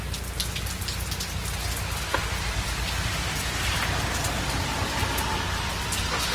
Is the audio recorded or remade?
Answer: recorded